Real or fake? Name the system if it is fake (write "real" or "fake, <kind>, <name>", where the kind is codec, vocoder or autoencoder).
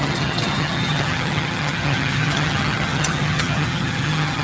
fake, vocoder, HiFi-GAN